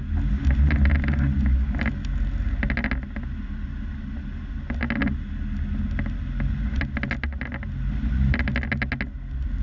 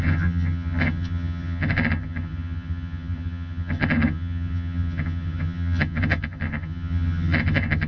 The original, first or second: first